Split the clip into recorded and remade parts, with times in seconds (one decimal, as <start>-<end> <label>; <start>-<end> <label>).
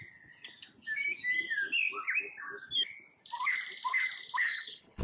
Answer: 0.0-4.4 recorded; 4.4-5.0 remade